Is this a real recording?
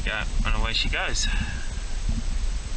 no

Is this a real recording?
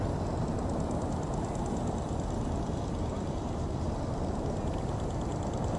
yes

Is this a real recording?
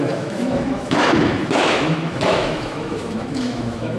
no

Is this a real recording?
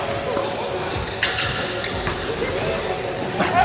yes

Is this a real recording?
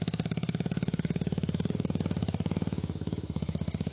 no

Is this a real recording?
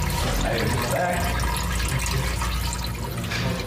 yes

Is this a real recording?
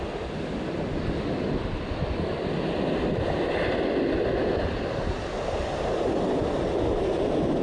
yes